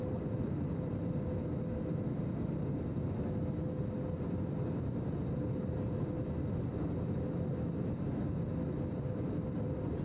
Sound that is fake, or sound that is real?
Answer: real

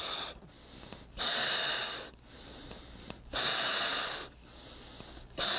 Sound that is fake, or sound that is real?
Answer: real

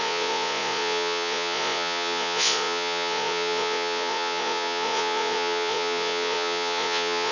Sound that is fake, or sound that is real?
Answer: fake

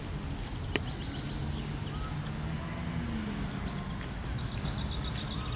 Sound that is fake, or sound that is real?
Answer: real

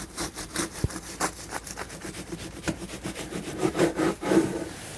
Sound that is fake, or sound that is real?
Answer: fake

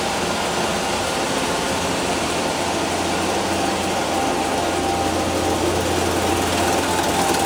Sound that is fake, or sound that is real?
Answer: real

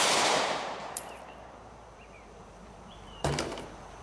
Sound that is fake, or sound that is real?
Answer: fake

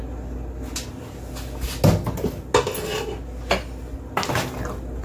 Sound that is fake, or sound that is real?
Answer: real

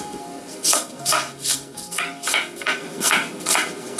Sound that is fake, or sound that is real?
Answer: fake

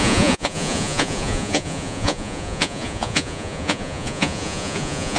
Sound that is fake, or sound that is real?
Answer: fake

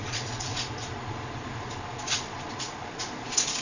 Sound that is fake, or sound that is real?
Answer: fake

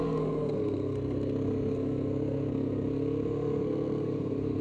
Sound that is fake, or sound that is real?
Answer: fake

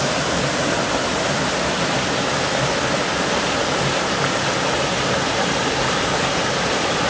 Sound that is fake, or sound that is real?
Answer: real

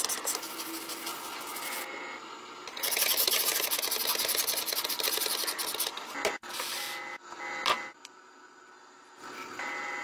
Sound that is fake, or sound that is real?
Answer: real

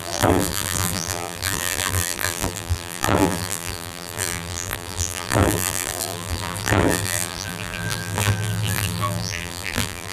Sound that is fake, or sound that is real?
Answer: fake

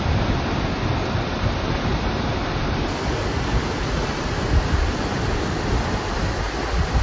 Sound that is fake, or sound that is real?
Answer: real